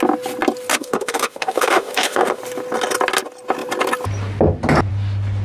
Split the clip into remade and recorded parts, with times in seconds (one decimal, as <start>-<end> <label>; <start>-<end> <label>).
0.0-0.7 recorded; 0.7-2.4 remade; 2.4-5.4 recorded